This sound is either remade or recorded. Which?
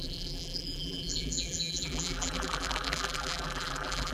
remade